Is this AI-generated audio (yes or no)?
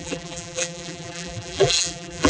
yes